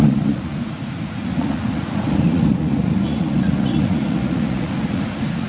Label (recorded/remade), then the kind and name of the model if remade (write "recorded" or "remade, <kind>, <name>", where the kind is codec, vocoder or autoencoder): remade, vocoder, Vocos